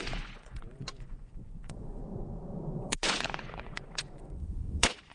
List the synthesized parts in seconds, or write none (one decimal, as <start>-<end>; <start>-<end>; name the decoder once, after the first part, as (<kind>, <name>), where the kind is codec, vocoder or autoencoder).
0.0-2.0 (vocoder, Vocos); 2.8-5.1